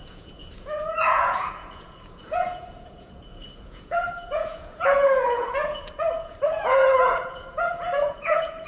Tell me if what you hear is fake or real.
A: fake